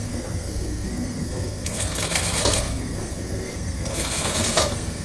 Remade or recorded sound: remade